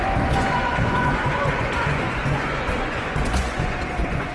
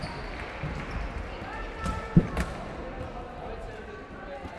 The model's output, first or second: first